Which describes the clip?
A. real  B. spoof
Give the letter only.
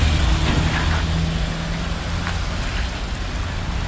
A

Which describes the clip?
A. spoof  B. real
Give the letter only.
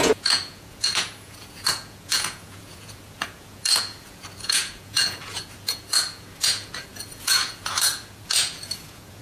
A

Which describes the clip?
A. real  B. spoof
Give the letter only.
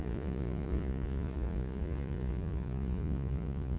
B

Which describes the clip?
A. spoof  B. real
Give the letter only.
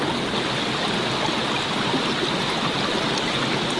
B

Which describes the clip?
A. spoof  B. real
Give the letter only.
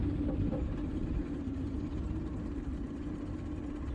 B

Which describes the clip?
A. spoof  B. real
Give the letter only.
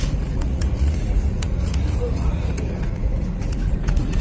A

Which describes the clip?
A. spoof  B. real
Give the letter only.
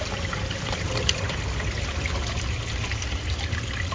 B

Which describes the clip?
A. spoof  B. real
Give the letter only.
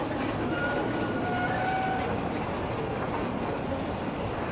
B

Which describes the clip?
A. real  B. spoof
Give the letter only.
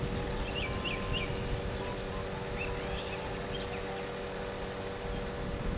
A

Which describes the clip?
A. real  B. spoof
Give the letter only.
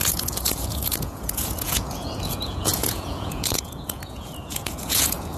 B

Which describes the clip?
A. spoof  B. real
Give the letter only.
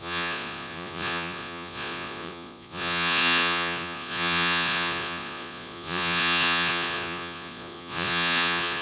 A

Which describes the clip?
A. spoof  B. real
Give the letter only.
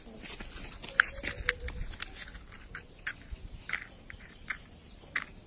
B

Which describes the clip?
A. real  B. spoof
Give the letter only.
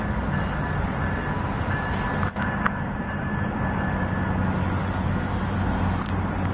A